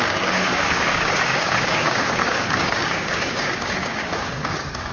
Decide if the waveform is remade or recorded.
remade